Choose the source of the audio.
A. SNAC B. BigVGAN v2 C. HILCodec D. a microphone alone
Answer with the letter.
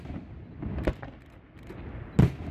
D